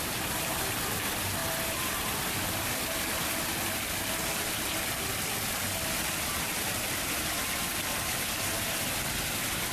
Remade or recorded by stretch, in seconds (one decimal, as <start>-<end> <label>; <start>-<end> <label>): 0.0-9.7 recorded